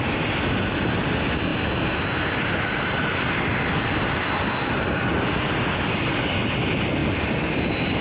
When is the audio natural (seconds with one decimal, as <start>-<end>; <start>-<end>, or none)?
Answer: 0.0-8.0